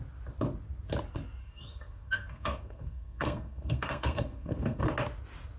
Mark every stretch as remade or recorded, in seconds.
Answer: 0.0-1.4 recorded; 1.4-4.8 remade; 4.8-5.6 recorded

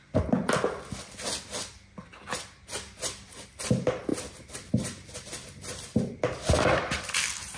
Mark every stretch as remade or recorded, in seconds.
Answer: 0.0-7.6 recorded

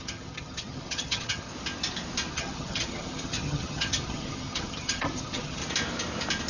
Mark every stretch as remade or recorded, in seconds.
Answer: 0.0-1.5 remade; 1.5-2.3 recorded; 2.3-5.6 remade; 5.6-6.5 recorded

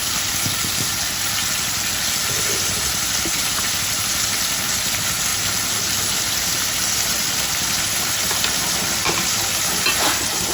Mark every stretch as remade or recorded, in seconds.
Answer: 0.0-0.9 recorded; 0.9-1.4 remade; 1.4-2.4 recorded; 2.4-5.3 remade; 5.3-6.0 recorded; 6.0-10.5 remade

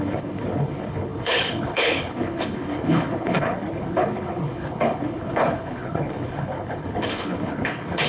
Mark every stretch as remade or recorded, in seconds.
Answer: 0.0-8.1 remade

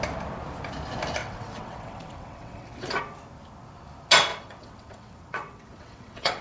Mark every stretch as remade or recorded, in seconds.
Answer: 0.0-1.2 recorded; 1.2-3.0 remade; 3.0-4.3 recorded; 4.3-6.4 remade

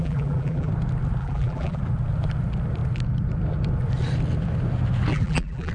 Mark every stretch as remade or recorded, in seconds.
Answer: 0.0-0.7 remade; 0.7-1.2 recorded; 1.2-1.8 remade; 1.8-5.1 recorded; 5.1-5.7 remade

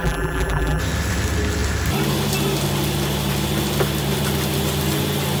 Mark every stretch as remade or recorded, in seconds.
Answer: 0.0-0.8 remade; 0.8-5.4 recorded